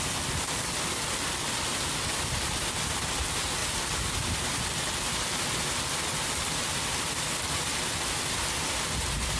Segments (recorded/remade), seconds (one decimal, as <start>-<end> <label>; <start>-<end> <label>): 0.0-9.4 recorded